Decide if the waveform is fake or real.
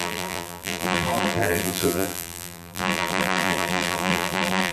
fake